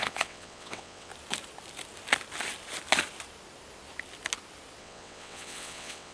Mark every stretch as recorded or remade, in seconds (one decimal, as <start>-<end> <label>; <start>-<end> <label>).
0.0-1.1 remade; 1.1-4.8 recorded; 4.8-6.1 remade